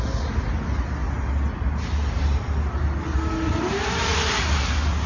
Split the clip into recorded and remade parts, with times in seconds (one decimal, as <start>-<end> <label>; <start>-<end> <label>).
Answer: 0.0-5.1 recorded

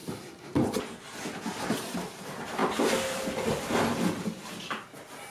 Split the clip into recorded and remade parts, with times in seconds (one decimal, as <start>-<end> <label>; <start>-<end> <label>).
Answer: 0.0-5.3 recorded

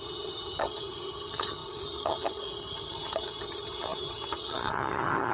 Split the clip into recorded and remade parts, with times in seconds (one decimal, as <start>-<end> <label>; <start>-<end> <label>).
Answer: 0.0-5.3 remade

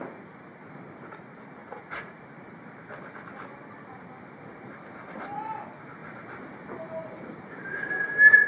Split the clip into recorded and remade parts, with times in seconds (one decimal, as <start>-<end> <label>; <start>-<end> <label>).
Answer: 0.0-1.6 recorded; 1.6-2.2 remade; 2.2-8.5 recorded

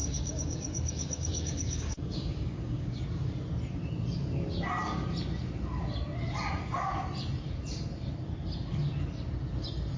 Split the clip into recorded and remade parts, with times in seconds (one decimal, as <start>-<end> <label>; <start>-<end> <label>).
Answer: 0.0-3.0 remade; 3.0-10.0 recorded

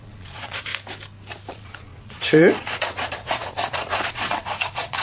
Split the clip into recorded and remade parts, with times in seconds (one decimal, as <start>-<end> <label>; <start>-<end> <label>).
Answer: 0.0-0.7 remade; 0.7-1.5 recorded; 1.5-5.0 remade

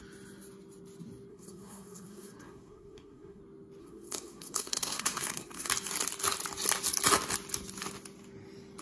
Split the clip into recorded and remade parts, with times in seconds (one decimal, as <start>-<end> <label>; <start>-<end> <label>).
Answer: 0.0-1.3 recorded; 1.3-3.4 remade; 3.4-3.8 recorded; 3.8-5.7 remade; 5.7-8.8 recorded